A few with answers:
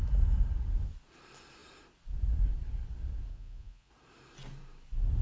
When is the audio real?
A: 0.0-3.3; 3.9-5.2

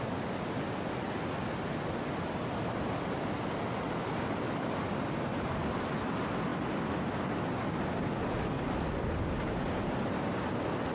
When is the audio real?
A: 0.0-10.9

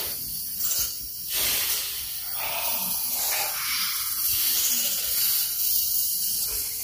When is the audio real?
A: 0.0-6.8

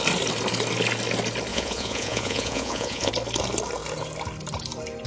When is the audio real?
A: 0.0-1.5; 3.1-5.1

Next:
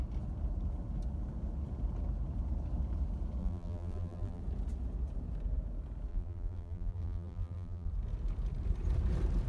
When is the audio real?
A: 0.0-3.4; 4.4-6.1; 7.9-9.5

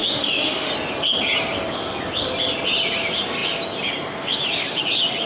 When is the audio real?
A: 0.7-5.3

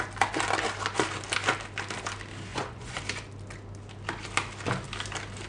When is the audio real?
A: 0.0-2.5; 3.0-5.5

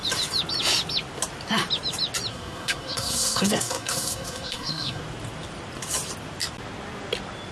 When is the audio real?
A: 0.0-2.3; 5.0-7.5